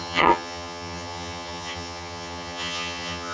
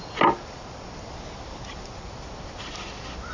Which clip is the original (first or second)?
second